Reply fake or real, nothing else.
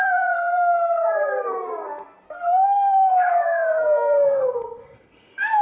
fake